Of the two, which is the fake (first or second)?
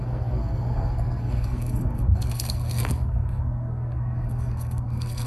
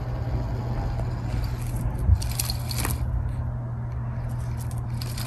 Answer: first